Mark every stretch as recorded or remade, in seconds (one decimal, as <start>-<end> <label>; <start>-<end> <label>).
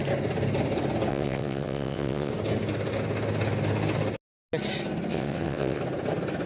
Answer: 0.0-1.1 recorded; 1.1-2.3 remade; 2.3-5.1 recorded; 5.1-5.8 remade; 5.8-6.5 recorded